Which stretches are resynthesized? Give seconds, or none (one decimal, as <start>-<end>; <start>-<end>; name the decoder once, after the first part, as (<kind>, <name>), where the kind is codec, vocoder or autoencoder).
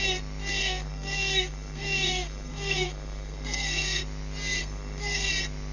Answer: 0.6-4.0 (codec, SNAC); 4.6-5.3